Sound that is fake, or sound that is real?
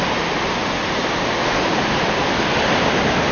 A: real